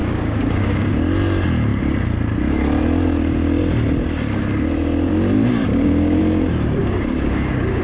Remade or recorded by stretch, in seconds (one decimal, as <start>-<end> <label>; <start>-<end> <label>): 0.0-0.9 remade; 0.9-5.7 recorded; 5.7-6.2 remade; 6.2-6.8 recorded; 6.8-7.8 remade